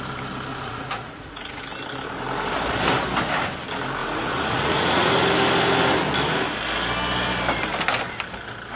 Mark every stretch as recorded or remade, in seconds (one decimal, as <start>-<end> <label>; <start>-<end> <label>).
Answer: 0.0-0.5 recorded; 0.5-1.6 remade; 1.6-4.0 recorded; 4.0-5.1 remade; 5.1-8.8 recorded